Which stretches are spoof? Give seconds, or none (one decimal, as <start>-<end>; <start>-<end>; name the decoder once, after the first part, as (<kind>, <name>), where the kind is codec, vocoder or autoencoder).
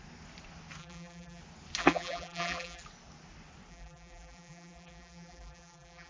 0.8-1.4 (vocoder, BigVGAN v2); 1.8-2.8; 3.7-6.1